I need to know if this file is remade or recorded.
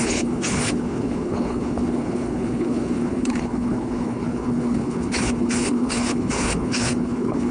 remade